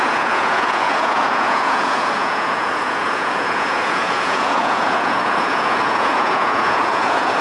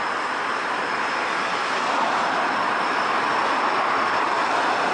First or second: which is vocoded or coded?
first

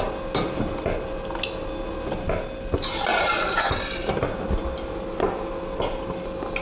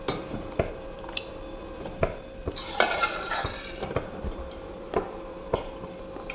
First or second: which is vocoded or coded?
second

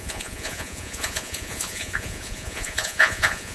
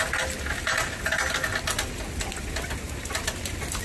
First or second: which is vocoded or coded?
first